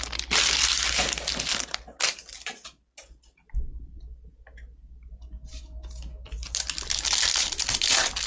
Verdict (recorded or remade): recorded